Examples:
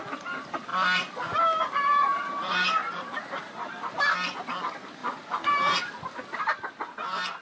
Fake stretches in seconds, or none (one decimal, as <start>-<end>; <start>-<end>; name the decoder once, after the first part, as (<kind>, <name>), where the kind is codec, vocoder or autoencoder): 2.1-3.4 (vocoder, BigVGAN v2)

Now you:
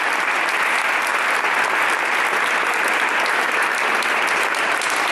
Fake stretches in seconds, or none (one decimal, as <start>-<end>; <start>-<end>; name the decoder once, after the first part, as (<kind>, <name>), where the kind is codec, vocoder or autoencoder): none

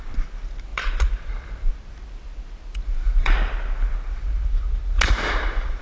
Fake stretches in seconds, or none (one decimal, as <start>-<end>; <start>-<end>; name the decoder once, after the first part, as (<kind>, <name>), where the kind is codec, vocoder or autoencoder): none

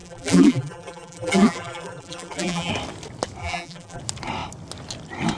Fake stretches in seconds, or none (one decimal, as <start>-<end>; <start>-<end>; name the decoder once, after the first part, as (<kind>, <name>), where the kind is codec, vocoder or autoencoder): 0.0-2.7 (vocoder, BigVGAN v2); 3.4-4.0